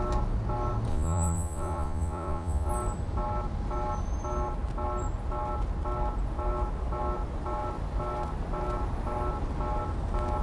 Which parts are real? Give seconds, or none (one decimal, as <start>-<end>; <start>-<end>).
0.0-0.9; 2.7-10.4